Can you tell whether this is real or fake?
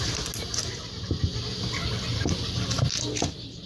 real